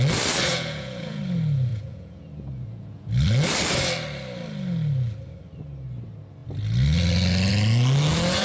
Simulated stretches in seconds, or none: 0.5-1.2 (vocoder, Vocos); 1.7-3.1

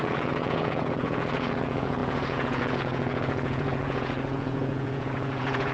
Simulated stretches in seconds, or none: 0.0-5.7 (vocoder, Vocos)

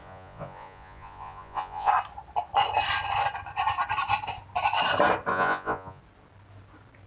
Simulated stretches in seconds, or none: 0.0-1.9 (vocoder, Vocos); 5.3-6.0

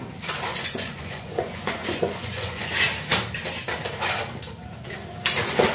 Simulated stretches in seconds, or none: 0.5-2.7 (vocoder, Vocos)

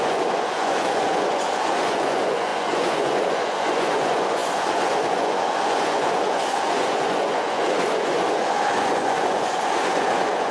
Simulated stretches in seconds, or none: 0.0-10.5 (vocoder, Vocos)

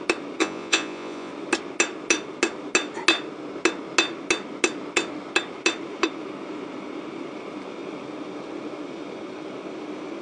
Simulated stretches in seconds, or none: 0.4-1.3 (vocoder, Vocos)